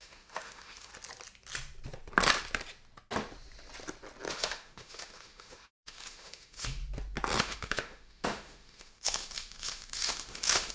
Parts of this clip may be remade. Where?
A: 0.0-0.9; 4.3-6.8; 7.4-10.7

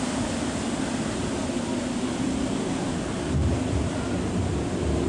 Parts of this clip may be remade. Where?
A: none

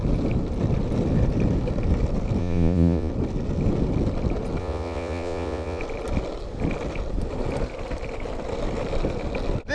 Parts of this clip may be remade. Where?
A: 2.4-3.1; 4.6-5.8

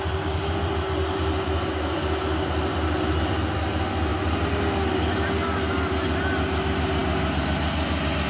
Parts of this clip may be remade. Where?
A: none

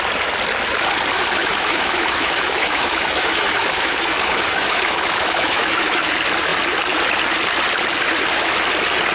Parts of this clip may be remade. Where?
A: 1.4-6.1